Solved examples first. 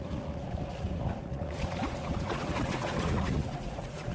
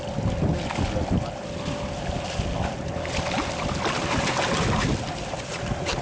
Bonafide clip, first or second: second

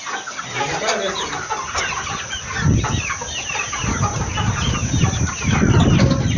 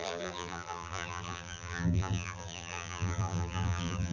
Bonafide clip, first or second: first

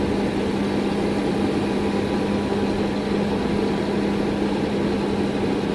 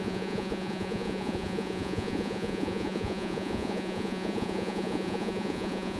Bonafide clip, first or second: first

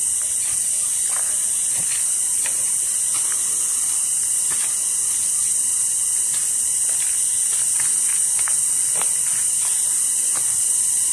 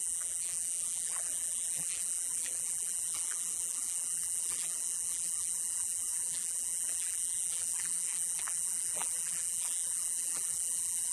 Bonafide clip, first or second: first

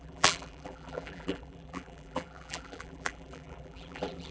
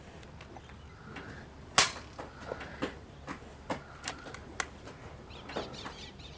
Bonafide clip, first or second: second